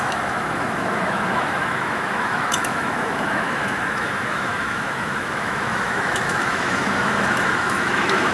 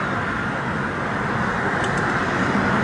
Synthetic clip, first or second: first